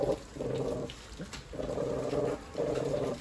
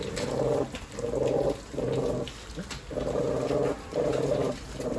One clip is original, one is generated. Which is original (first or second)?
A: second